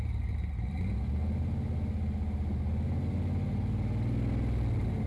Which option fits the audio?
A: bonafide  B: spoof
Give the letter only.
A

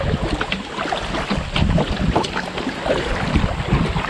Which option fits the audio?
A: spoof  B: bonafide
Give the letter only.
B